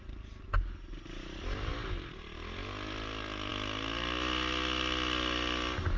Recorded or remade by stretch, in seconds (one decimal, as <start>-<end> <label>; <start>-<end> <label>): 0.0-6.0 recorded